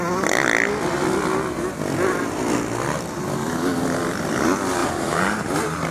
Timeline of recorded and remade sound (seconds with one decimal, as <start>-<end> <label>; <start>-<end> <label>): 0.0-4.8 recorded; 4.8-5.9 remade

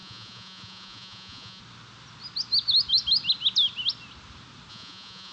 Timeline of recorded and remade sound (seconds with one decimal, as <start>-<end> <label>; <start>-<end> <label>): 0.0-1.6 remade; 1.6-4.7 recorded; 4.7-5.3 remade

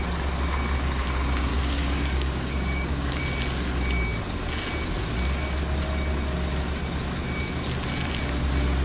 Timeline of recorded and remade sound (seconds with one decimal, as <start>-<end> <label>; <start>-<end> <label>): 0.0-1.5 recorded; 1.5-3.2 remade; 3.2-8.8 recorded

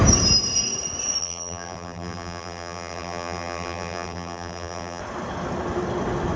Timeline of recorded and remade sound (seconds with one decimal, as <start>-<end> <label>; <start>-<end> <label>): 0.0-1.2 recorded; 1.2-5.0 remade; 5.0-6.4 recorded

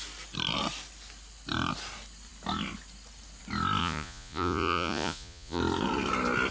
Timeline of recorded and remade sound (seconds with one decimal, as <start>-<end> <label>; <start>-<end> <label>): 0.0-3.8 recorded; 3.8-5.6 remade; 5.6-6.5 recorded

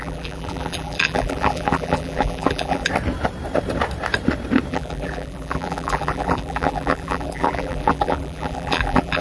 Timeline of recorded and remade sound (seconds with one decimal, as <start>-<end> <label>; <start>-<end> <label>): 0.0-2.9 remade; 2.9-4.7 recorded; 4.7-9.2 remade